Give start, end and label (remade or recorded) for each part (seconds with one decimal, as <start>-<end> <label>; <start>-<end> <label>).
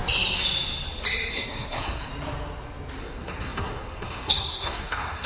0.0-1.3 recorded; 1.3-2.1 remade; 2.1-3.0 recorded; 3.0-5.3 remade